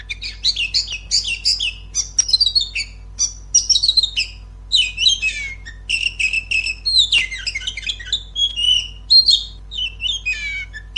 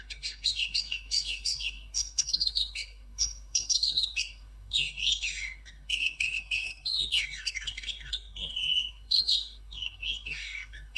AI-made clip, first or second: second